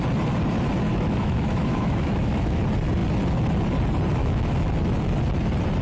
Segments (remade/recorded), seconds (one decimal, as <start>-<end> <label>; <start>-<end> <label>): 0.0-0.9 recorded; 0.9-2.6 remade; 2.6-4.2 recorded; 4.2-4.7 remade; 4.7-5.8 recorded